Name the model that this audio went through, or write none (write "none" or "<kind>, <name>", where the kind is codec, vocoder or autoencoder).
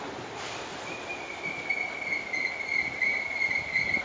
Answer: none